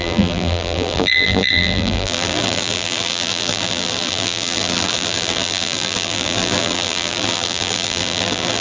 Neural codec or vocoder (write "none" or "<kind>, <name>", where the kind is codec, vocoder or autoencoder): vocoder, BigVGAN v2